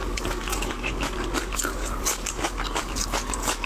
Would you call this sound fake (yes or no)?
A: yes